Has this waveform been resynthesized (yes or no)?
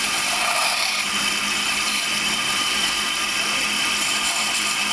yes